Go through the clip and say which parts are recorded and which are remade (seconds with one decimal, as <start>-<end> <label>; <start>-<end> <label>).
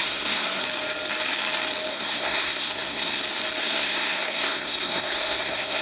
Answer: 0.0-0.6 remade; 0.6-1.9 recorded; 1.9-3.2 remade; 3.2-3.6 recorded; 3.6-5.8 remade